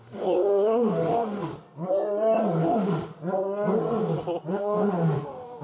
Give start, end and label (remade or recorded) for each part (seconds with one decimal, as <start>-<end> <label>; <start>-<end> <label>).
0.0-1.5 remade; 1.5-2.6 recorded; 2.6-3.2 remade; 3.2-4.5 recorded; 4.5-5.6 remade